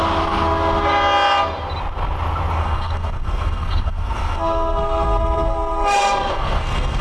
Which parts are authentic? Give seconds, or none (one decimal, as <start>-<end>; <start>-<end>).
0.0-2.6